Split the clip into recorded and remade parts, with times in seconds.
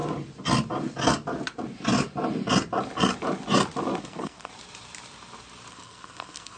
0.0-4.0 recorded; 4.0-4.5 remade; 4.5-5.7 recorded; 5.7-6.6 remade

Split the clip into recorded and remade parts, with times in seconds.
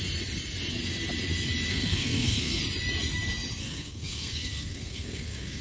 0.0-1.7 recorded; 1.7-2.6 remade; 2.6-3.6 recorded; 3.6-5.6 remade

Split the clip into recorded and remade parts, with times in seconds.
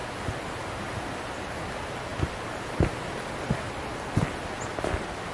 0.0-5.3 recorded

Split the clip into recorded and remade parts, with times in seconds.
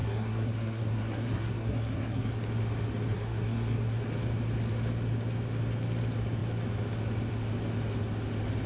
0.0-2.3 remade; 2.3-3.1 recorded; 3.1-4.0 remade; 4.0-8.7 recorded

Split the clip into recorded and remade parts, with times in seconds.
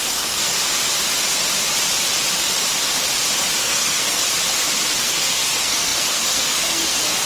0.0-0.5 remade; 0.5-3.6 recorded; 3.6-4.3 remade; 4.3-5.0 recorded; 5.0-7.3 remade